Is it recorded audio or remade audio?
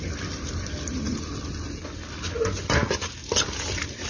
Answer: recorded